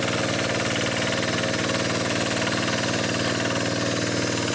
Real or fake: real